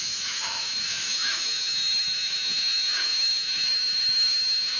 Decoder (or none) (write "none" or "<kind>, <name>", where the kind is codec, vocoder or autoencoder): autoencoder, DAC-VAE